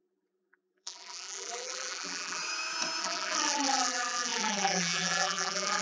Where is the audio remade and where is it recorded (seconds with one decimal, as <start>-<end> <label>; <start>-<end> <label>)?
0.0-2.4 remade; 2.4-3.0 recorded; 3.0-5.8 remade